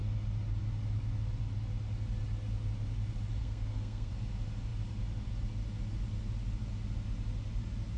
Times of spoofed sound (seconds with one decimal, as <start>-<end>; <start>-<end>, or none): 3.4-4.1